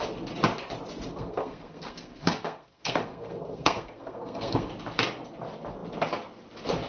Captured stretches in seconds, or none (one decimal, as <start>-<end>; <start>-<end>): 0.0-1.1; 4.7-6.9